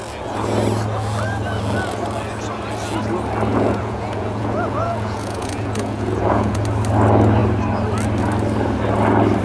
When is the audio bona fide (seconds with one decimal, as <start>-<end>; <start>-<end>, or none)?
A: 0.0-3.5; 6.6-9.4